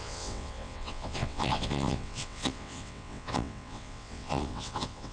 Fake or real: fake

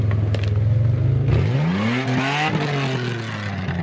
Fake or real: real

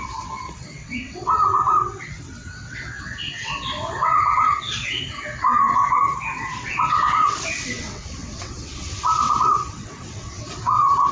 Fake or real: fake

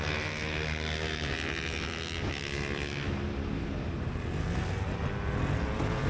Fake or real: real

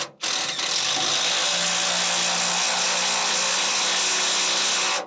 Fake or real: real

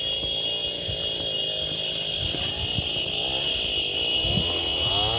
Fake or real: real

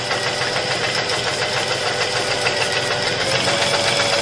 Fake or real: real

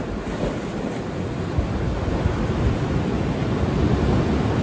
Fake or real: real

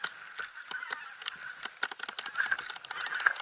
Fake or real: real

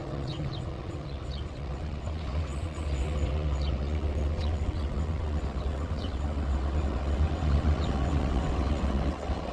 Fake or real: fake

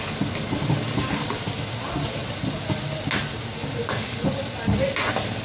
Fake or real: real